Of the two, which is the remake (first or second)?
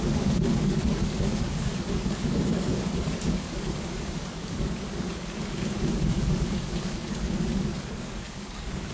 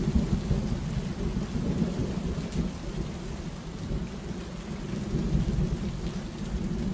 first